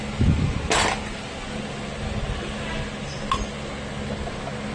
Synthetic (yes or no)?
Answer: no